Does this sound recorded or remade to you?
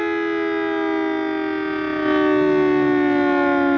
recorded